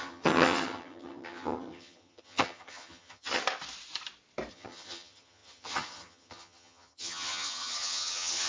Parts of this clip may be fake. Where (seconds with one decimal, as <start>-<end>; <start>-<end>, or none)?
0.0-3.4; 4.5-8.5